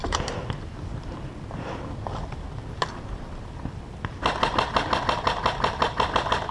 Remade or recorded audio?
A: recorded